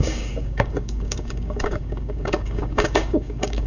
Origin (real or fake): fake